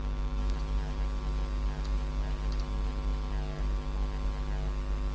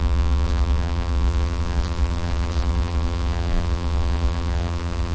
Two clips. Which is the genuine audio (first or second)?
first